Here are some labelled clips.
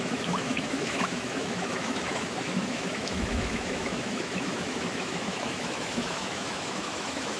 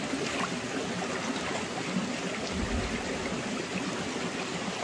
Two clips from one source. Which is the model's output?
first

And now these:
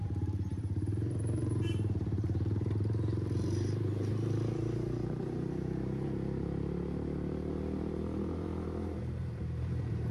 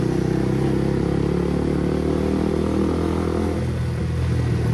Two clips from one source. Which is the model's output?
first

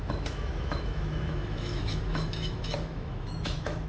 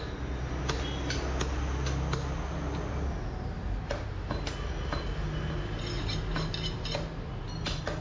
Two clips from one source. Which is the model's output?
first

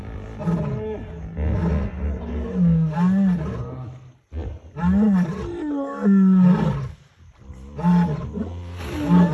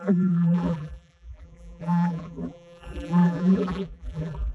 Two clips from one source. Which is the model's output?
second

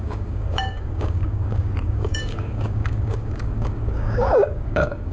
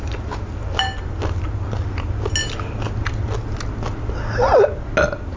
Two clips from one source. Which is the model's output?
first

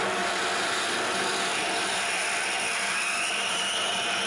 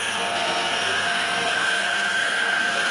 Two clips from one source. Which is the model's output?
second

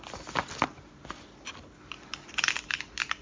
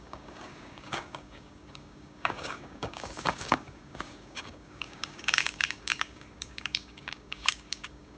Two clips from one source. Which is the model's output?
second